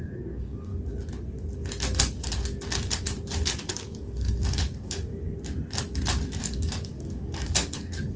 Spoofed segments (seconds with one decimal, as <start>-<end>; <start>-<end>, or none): 0.0-0.7; 3.7-5.1; 6.4-8.2